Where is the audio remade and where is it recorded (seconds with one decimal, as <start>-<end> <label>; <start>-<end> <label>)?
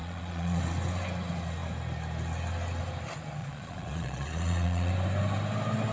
0.0-0.6 remade; 0.6-3.4 recorded; 3.4-4.9 remade; 4.9-5.9 recorded